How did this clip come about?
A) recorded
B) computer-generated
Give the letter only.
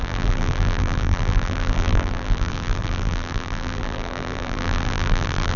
B